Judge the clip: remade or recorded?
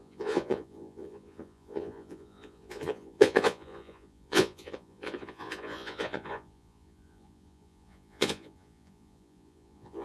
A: remade